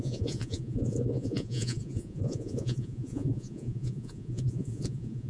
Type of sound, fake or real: fake